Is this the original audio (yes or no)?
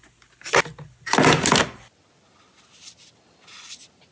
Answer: yes